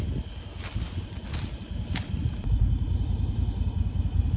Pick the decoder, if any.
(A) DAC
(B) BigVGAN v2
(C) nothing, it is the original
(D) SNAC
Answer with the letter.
C